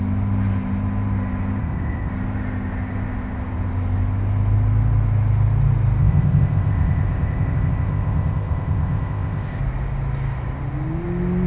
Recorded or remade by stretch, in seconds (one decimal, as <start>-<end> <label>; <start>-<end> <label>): 0.0-1.6 recorded; 1.6-2.1 remade; 2.1-6.0 recorded; 6.0-9.6 remade; 9.6-11.5 recorded